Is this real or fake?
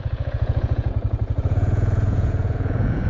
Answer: fake